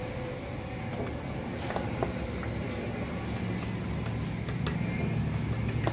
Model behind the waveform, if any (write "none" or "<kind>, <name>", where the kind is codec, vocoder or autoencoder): none